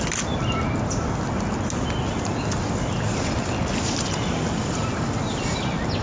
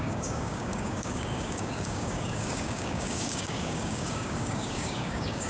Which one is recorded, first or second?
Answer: first